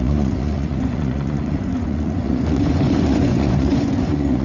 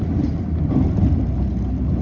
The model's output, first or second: first